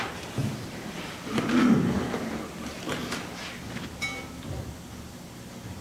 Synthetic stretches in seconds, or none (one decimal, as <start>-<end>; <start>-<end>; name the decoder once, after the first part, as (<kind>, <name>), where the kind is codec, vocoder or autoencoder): none